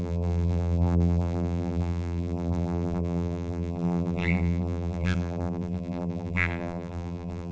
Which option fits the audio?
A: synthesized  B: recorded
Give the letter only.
A